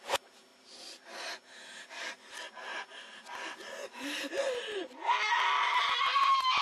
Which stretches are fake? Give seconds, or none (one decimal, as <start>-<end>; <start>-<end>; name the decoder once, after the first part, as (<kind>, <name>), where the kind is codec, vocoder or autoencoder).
0.5-2.1 (vocoder, BigVGAN v2)